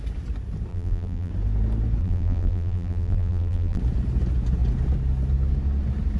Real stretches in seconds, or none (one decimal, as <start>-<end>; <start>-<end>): 0.0-0.7; 1.3-2.0; 3.8-6.2